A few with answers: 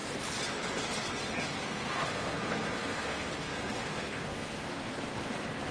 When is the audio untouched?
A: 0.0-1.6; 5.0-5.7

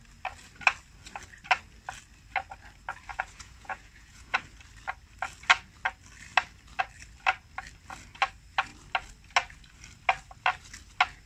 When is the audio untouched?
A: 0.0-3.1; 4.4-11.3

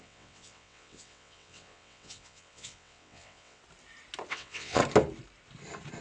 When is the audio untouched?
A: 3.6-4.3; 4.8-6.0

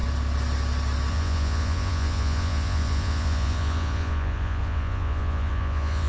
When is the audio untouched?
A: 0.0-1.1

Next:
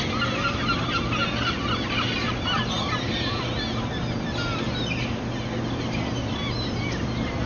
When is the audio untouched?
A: 0.0-7.5

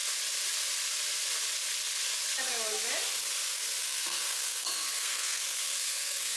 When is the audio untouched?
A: 0.0-3.8

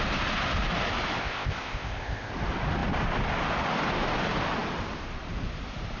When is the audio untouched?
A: 0.0-1.2; 2.3-6.0

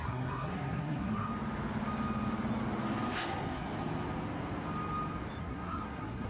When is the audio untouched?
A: 1.3-3.2; 3.7-5.4